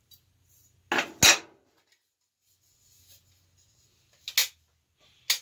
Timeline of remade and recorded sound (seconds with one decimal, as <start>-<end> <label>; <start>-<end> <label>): 0.0-5.4 recorded